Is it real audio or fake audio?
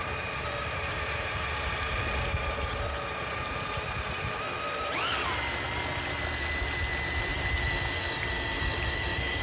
real